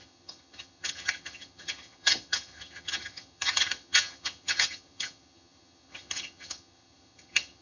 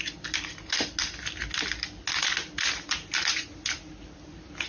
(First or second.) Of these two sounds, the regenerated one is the first